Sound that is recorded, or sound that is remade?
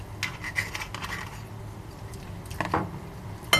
recorded